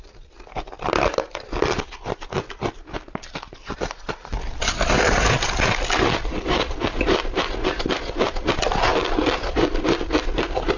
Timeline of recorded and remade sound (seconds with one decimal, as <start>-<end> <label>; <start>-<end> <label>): 0.0-10.8 recorded